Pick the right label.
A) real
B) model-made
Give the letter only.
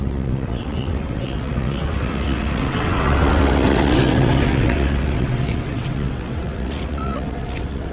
B